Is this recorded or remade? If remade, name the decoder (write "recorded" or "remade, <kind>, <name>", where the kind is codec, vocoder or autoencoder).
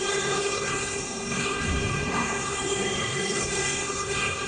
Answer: remade, codec, SNAC